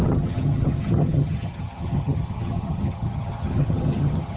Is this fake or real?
fake